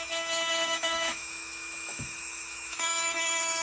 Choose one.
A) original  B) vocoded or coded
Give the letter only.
B